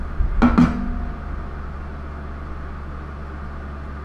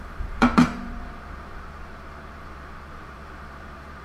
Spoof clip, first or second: second